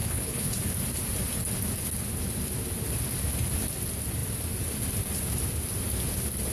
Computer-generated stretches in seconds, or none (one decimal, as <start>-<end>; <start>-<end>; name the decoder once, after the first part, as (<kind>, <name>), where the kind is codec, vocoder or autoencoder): 0.0-0.5 (codec, HILCodec)